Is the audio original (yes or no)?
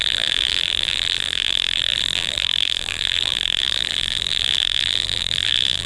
no